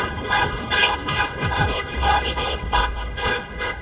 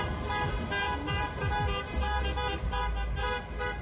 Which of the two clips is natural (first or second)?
second